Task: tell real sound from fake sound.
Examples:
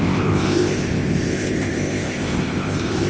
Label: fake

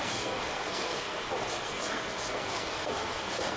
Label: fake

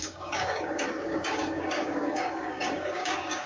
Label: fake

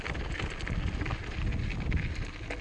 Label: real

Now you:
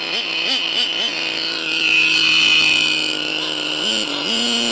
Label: real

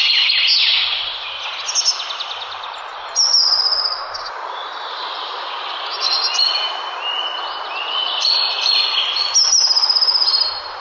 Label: real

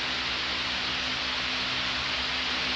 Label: real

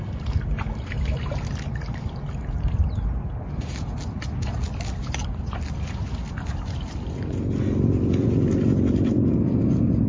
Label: real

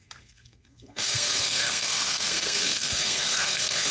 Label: fake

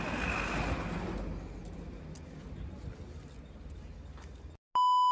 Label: real